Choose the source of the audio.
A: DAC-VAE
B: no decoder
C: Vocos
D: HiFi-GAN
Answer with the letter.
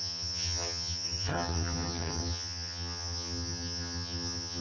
D